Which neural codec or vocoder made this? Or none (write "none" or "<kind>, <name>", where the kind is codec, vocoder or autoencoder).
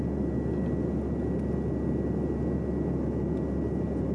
none